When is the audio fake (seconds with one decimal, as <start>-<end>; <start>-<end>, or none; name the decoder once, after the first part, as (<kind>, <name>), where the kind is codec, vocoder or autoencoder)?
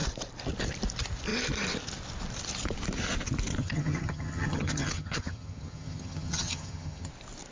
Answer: 3.6-7.1 (vocoder, HiFi-GAN)